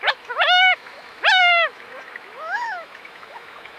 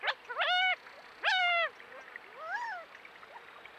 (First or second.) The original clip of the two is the second